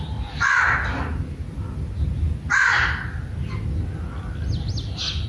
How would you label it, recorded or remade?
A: recorded